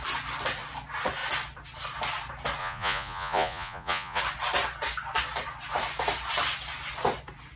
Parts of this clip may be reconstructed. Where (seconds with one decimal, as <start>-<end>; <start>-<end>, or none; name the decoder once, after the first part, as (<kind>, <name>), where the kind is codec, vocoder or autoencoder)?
2.6-4.2 (vocoder, Vocos)